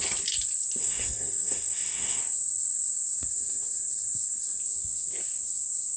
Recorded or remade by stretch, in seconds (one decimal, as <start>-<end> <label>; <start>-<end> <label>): 0.0-0.8 recorded; 0.8-2.2 remade; 2.2-6.0 recorded